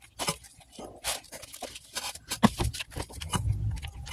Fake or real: real